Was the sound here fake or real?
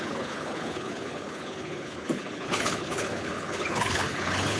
fake